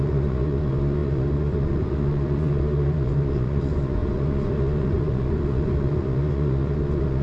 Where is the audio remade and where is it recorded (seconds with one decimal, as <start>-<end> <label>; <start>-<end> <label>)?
0.0-7.2 remade